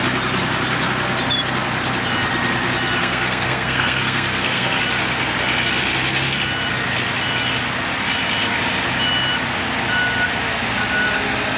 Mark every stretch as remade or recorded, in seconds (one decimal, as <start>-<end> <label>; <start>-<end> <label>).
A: 0.0-3.0 recorded; 3.0-4.8 remade; 4.8-11.6 recorded